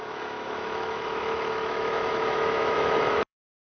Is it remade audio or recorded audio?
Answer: remade